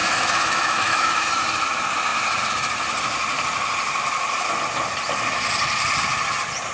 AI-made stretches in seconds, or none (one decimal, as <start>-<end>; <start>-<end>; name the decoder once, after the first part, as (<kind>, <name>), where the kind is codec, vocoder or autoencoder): 0.0-1.3 (autoencoder, DAC-VAE)